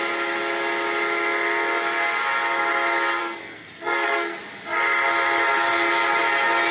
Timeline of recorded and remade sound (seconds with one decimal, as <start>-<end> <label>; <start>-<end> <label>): 0.0-3.2 recorded; 3.2-4.4 remade; 4.4-6.7 recorded